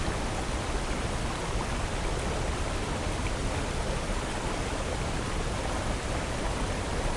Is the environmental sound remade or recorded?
recorded